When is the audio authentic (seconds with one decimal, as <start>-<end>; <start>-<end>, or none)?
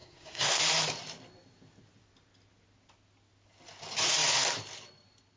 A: 0.6-5.4